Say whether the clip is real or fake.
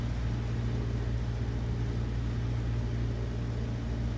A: real